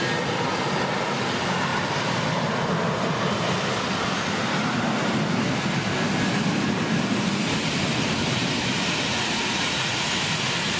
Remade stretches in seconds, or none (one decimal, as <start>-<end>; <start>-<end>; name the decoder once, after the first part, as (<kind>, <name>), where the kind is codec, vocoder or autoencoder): 9.1-10.2 (vocoder, Vocos)